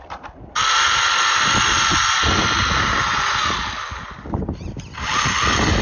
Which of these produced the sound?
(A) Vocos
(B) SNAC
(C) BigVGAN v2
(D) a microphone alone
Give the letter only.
D